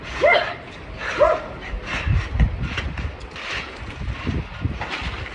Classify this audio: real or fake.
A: real